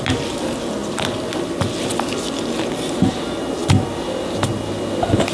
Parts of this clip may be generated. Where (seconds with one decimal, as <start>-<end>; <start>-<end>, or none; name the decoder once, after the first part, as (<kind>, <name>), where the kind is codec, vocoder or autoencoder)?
none